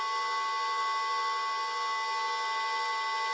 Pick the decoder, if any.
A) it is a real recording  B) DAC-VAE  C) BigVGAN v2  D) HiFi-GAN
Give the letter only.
A